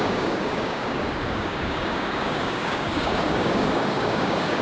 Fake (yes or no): yes